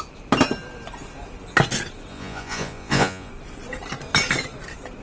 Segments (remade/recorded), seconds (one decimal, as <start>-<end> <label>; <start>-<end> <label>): 0.0-2.1 recorded; 2.1-3.3 remade; 3.3-5.0 recorded